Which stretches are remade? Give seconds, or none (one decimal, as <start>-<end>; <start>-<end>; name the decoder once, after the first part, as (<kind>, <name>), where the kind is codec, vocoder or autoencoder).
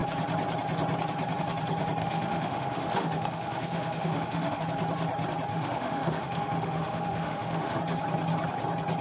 2.0-4.6 (autoencoder, DAC-VAE); 5.5-7.8